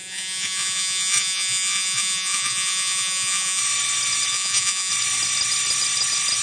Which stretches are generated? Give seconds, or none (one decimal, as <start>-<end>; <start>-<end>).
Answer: 0.0-3.6; 4.3-4.9